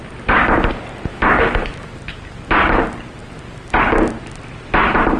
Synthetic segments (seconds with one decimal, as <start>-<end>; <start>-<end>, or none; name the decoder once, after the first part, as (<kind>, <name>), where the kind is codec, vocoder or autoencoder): 1.1-1.9 (autoencoder, DAC-VAE)